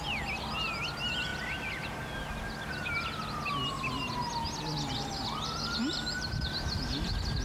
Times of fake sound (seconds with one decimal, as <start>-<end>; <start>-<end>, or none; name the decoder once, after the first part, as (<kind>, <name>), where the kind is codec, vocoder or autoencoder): 1.3-1.9 (vocoder, BigVGAN v2); 5.9-6.9